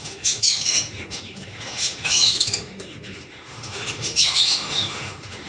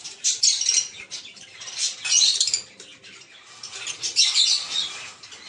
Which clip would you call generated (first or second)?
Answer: first